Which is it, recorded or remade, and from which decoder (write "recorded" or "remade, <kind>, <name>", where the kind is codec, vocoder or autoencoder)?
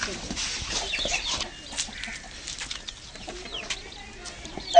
recorded